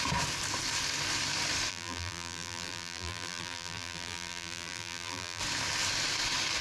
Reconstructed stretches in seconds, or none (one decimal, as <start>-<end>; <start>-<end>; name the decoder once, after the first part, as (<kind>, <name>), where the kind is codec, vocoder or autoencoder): 1.7-5.4 (vocoder, BigVGAN v2)